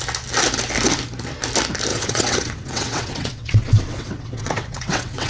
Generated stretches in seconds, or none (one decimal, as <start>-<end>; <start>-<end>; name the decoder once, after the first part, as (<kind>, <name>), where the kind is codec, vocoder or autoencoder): 1.9-5.3 (vocoder, WaveNeXt)